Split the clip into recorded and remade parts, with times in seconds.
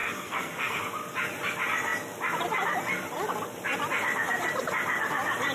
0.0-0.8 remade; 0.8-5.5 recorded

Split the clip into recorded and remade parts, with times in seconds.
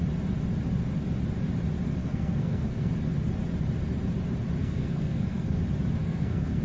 0.0-2.0 recorded; 2.0-2.9 remade; 2.9-4.6 recorded; 4.6-5.6 remade; 5.6-6.0 recorded; 6.0-6.6 remade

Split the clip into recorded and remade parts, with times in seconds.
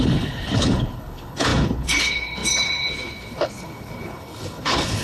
0.0-5.0 remade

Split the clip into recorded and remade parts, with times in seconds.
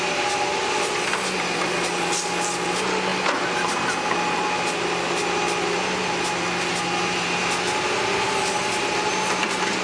0.0-9.8 recorded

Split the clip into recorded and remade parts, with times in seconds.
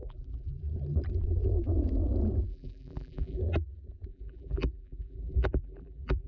0.0-0.5 remade; 0.5-2.5 recorded; 2.5-3.4 remade; 3.4-4.1 recorded; 4.1-6.3 remade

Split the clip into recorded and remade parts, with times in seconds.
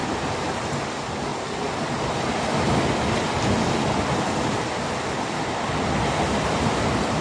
0.0-7.2 recorded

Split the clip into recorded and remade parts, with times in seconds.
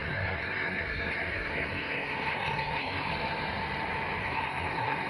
0.0-3.1 remade; 3.1-4.2 recorded; 4.2-5.1 remade